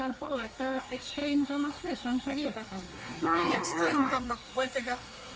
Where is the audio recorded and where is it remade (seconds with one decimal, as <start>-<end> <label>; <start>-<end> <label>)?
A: 0.0-5.4 remade